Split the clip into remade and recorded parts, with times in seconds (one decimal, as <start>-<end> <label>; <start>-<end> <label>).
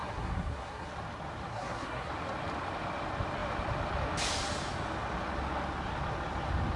0.0-0.9 remade; 0.9-1.5 recorded; 1.5-2.1 remade; 2.1-6.8 recorded